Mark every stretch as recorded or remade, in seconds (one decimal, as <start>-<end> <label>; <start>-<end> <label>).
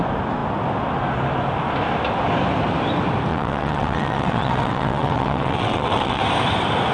0.0-3.3 recorded; 3.3-6.2 remade; 6.2-6.9 recorded